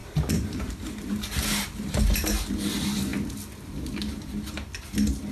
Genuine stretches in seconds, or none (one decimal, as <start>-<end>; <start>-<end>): 2.0-5.3